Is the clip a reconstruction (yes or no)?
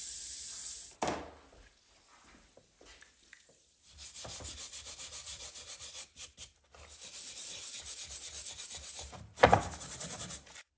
no